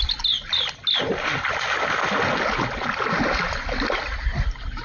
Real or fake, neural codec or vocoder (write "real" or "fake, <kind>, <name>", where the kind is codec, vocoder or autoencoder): real